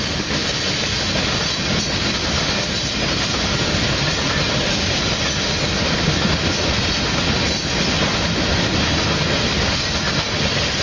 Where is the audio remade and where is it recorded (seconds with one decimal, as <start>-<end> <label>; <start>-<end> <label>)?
0.0-10.8 recorded